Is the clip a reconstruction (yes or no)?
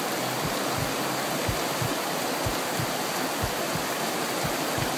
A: no